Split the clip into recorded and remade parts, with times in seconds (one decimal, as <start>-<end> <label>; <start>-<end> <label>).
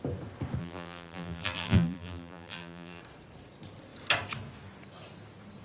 0.0-0.6 recorded; 0.6-3.0 remade; 3.0-5.6 recorded